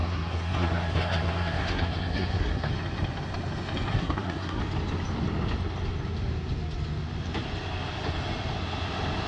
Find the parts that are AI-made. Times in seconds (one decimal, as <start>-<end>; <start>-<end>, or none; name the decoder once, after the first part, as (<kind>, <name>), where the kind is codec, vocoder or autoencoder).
0.0-2.7 (codec, SNAC); 3.9-4.6